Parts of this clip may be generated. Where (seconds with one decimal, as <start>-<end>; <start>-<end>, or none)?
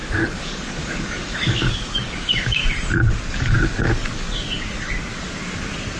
0.0-2.6; 3.3-5.1